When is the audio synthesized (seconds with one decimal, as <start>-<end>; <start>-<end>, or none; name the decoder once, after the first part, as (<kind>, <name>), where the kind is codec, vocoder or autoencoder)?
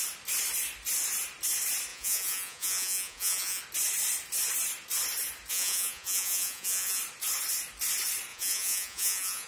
1.9-3.6 (vocoder, Vocos); 5.5-7.0; 8.3-9.5